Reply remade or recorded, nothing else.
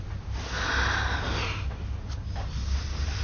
recorded